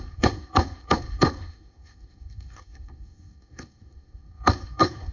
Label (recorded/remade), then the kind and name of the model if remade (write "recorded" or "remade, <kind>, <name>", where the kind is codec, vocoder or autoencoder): remade, codec, SNAC